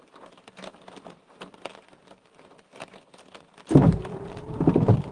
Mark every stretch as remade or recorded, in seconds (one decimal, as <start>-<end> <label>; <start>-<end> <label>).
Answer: 0.0-4.1 recorded; 4.1-5.1 remade